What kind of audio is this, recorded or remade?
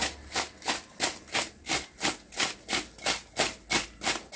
recorded